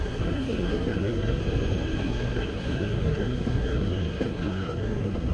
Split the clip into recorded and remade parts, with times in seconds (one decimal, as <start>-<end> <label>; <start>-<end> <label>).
0.0-1.4 remade; 1.4-2.0 recorded; 2.0-5.3 remade